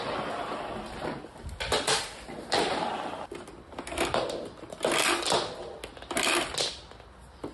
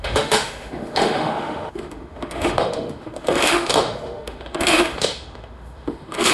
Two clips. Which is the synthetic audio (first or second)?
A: second